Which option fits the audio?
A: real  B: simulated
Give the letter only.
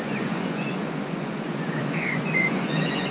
B